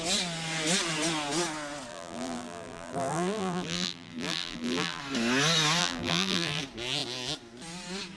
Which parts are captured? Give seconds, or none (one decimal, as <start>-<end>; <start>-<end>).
0.0-1.9; 5.0-5.8; 6.6-8.2